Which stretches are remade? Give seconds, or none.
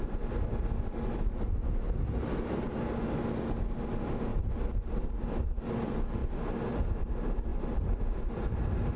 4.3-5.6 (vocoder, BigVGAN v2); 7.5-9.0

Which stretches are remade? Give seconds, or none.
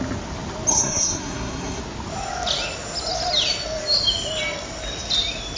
0.7-1.8 (codec, SNAC)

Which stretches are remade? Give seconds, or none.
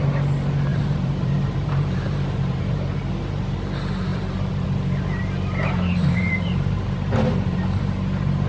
0.7-3.1 (vocoder, BigVGAN v2); 4.1-7.8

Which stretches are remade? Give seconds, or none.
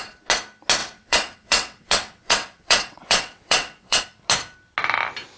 0.8-4.0 (vocoder, WaveNeXt)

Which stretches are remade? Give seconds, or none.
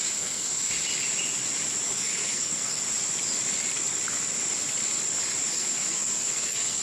0.0-0.7 (codec, SNAC); 1.9-2.8; 5.5-6.8